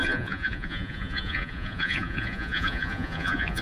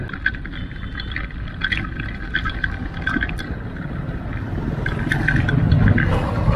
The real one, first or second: second